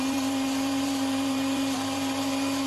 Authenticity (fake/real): fake